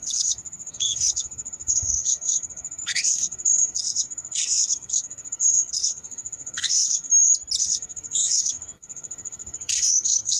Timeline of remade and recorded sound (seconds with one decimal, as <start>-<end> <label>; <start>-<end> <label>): 0.0-7.1 remade; 7.1-7.6 recorded; 7.6-10.4 remade